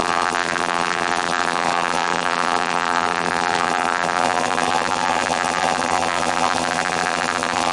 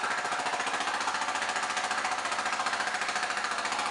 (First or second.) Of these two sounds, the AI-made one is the first